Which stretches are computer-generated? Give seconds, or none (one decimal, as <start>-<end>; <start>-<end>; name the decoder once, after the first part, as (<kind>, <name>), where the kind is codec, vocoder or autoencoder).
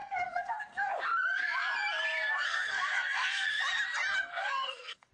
0.0-0.9 (codec, SNAC); 2.2-3.6; 4.3-5.1